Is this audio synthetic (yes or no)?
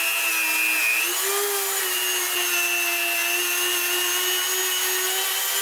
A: no